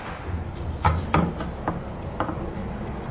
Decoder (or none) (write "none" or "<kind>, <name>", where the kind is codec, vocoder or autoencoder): none